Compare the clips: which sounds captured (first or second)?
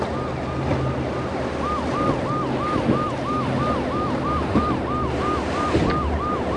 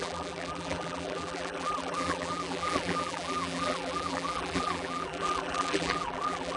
first